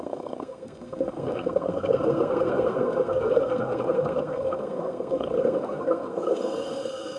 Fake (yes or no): yes